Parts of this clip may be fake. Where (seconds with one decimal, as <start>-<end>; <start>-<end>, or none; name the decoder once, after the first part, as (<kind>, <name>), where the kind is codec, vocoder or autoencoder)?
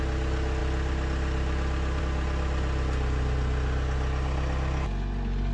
none